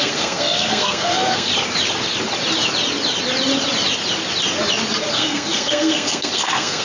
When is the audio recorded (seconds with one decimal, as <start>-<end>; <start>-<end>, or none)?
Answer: 1.5-5.1